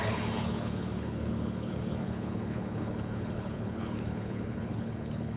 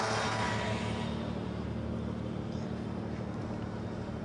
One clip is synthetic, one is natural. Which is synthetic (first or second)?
first